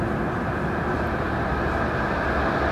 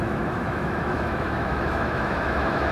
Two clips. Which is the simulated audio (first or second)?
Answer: second